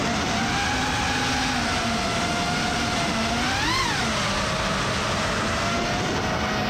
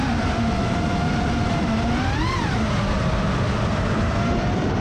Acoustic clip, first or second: first